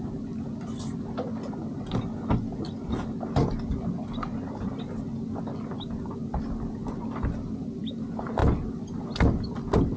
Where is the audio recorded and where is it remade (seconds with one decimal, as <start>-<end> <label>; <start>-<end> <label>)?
0.0-10.0 recorded